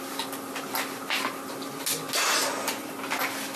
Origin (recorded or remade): recorded